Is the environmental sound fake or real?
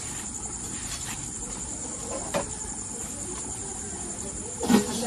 fake